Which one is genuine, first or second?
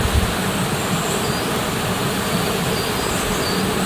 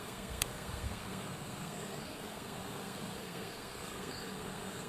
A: first